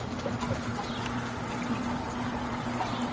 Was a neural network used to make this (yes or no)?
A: no